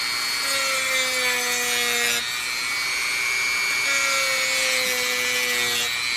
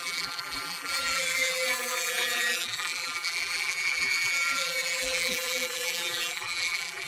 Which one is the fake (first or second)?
second